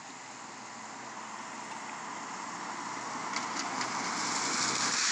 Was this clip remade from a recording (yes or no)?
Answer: no